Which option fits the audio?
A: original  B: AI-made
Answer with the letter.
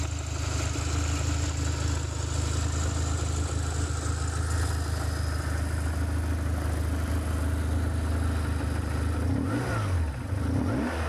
A